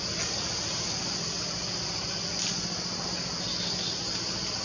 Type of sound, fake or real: real